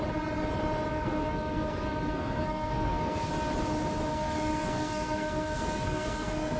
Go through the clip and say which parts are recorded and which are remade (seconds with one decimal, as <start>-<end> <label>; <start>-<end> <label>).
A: 0.0-0.9 recorded; 0.9-3.3 remade; 3.3-4.1 recorded; 4.1-6.6 remade